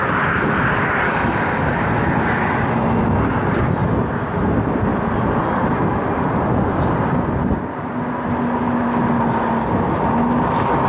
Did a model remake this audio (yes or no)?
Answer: no